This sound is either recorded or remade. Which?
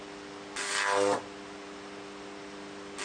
recorded